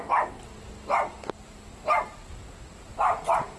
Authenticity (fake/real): real